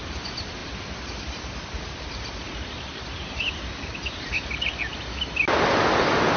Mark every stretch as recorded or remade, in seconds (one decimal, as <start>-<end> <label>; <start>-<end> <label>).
0.0-0.6 recorded; 0.6-4.3 remade; 4.3-6.4 recorded